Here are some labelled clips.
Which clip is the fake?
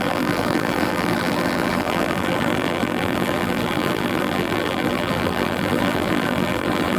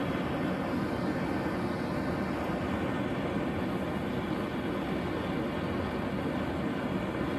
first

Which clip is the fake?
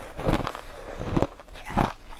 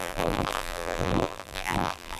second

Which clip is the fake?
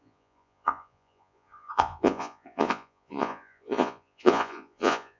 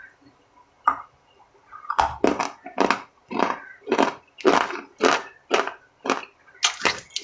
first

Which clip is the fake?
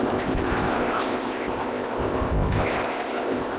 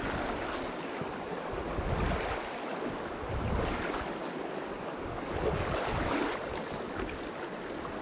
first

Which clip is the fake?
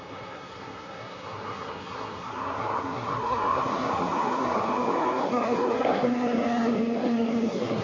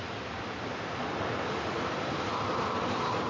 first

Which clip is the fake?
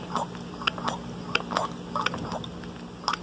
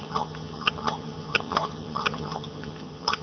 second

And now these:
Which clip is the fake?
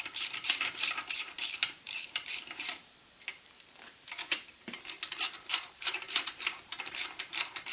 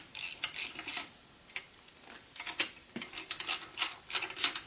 first